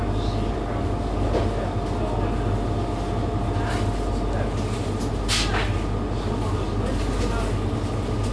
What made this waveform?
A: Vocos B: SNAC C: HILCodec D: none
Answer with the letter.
D